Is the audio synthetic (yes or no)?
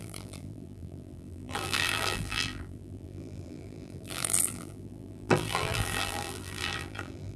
yes